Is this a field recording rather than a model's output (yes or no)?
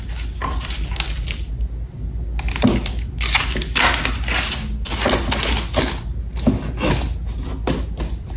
yes